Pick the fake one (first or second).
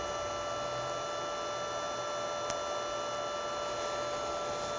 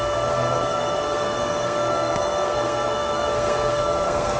second